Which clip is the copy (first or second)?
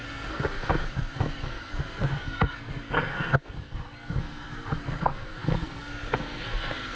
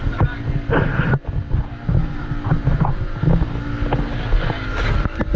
first